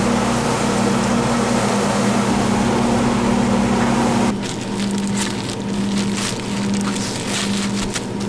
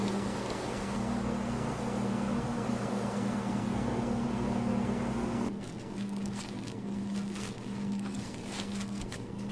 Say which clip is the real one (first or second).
first